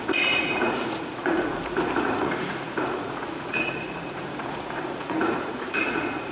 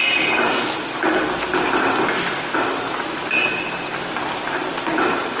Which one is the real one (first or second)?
second